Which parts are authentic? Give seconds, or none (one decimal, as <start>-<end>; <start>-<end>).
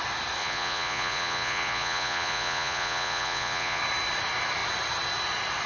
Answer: 0.0-0.4; 3.8-5.7